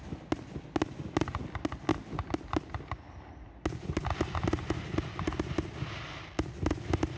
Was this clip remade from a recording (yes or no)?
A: no